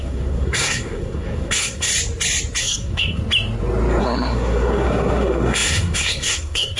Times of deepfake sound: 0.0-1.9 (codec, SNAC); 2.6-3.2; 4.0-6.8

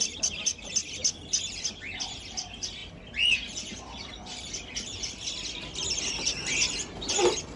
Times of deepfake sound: none